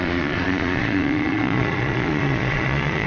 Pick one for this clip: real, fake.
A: fake